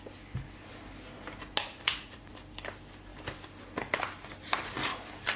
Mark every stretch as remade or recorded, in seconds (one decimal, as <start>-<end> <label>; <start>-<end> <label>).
0.0-1.6 recorded; 1.6-2.3 remade; 2.3-5.4 recorded